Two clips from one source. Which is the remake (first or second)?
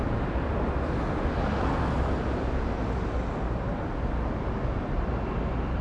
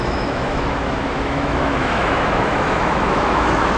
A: second